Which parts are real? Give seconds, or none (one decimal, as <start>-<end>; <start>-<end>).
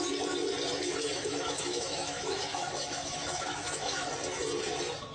0.0-1.0; 4.1-5.1